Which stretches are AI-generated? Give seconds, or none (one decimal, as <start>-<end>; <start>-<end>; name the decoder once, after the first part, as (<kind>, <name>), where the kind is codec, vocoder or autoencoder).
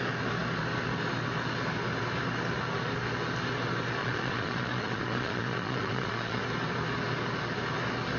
4.0-6.4 (vocoder, Vocos)